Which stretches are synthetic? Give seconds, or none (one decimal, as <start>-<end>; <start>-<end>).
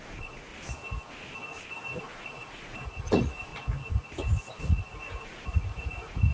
0.0-0.5; 2.0-3.5; 4.6-6.3